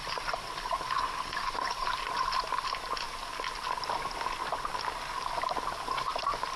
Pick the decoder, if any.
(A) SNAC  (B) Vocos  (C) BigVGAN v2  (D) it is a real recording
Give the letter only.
D